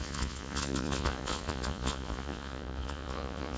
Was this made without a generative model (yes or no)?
no